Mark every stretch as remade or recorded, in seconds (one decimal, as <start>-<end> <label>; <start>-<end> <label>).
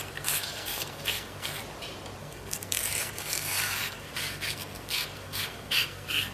0.0-1.6 remade; 1.6-2.2 recorded; 2.2-6.3 remade